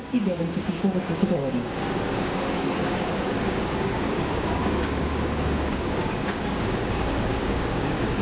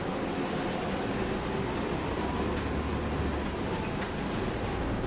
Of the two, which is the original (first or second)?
second